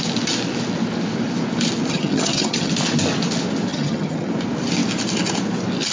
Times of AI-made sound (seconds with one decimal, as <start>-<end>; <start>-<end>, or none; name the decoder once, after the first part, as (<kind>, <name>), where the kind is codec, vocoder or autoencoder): 1.9-2.7 (vocoder, HiFi-GAN); 3.7-4.3